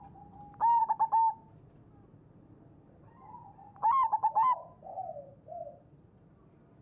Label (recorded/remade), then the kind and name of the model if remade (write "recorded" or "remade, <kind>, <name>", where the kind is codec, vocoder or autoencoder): recorded